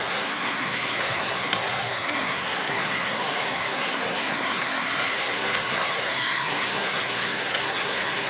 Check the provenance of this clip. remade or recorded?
remade